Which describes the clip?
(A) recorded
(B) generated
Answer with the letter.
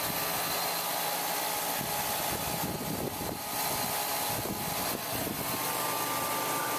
A